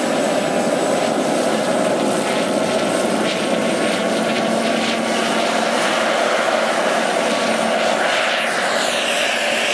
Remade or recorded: recorded